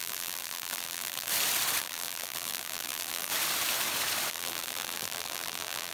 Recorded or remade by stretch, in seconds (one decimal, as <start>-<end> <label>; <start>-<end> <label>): 0.0-1.3 remade; 1.3-1.8 recorded; 1.8-3.3 remade; 3.3-4.3 recorded; 4.3-5.9 remade